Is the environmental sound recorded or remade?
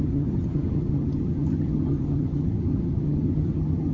remade